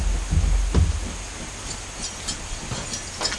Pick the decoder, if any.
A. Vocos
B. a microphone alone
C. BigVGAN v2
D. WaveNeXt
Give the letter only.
B